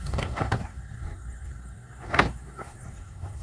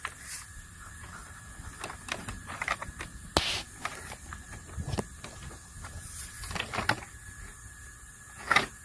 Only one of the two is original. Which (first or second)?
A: second